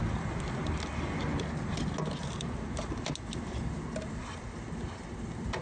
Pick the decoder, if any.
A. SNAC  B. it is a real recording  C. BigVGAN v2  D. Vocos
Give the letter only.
B